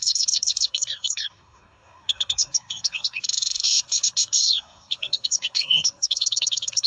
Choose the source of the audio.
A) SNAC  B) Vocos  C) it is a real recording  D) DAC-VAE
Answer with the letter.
A